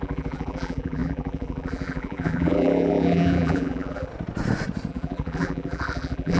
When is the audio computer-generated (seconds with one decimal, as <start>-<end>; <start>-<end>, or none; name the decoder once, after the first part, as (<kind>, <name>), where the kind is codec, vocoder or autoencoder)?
0.0-4.1 (vocoder, BigVGAN v2); 4.9-6.4

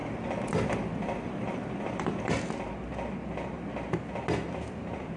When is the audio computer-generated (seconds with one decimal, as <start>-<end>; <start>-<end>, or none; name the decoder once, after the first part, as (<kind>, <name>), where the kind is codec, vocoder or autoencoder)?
0.0-2.3 (vocoder, BigVGAN v2)

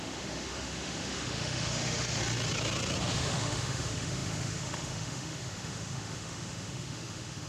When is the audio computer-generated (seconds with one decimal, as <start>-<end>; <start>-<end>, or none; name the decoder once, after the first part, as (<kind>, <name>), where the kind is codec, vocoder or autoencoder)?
0.0-2.2 (autoencoder, DAC-VAE); 3.0-7.5

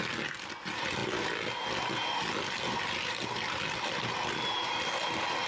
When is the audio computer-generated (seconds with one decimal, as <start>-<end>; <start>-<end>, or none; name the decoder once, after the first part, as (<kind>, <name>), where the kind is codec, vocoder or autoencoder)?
none

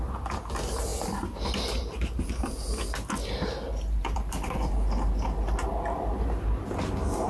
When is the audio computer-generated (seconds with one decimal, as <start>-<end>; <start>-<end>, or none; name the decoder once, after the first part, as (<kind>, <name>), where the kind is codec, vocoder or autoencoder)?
4.0-4.7 (vocoder, BigVGAN v2)

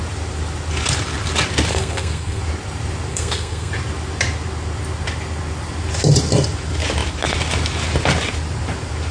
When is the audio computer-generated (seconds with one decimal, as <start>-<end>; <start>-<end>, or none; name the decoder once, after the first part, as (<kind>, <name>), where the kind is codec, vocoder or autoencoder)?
1.7-2.4 (codec, SNAC); 3.1-3.7

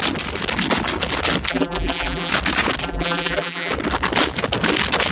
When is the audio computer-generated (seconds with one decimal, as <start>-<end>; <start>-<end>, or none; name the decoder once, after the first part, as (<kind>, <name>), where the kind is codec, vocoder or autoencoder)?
1.5-2.3 (vocoder, BigVGAN v2); 2.8-3.7